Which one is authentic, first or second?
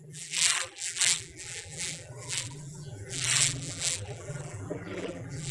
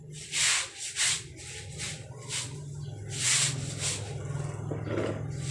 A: second